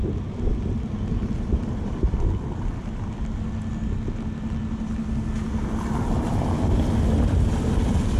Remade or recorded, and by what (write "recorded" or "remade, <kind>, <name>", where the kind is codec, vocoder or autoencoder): recorded